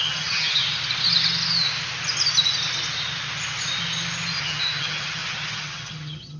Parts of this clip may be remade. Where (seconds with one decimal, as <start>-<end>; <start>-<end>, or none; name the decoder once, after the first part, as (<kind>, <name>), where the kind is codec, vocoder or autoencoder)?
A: 0.0-0.6 (vocoder, HiFi-GAN); 4.4-6.4